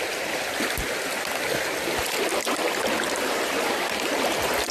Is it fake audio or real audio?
real